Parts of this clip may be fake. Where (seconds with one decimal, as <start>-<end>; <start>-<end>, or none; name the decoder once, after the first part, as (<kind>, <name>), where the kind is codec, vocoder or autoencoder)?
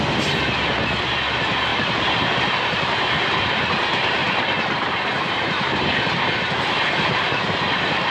1.7-3.1 (vocoder, BigVGAN v2); 4.2-6.0